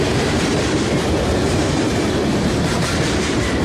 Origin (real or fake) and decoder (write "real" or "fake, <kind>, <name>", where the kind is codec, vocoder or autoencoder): fake, vocoder, BigVGAN v2